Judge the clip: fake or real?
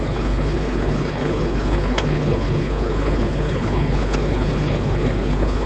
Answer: fake